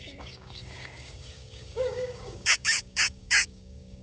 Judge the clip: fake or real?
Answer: fake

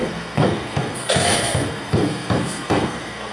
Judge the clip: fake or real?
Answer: fake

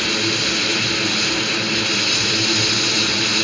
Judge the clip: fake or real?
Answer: real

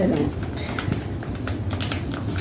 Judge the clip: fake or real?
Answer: real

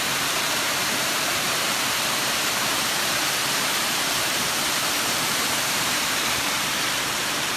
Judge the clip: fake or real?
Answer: fake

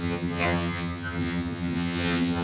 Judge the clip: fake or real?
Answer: fake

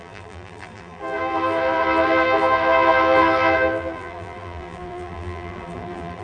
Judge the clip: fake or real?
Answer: fake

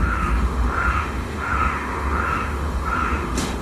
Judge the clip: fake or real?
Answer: fake